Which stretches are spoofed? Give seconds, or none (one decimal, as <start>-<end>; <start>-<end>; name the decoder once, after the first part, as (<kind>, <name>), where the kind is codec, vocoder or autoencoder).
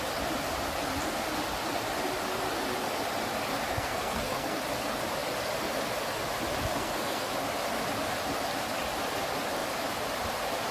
3.7-4.6 (codec, SNAC); 6.7-7.3